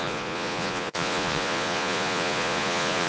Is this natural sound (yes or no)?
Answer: no